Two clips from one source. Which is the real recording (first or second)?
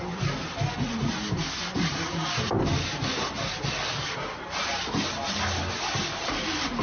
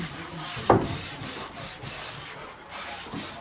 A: first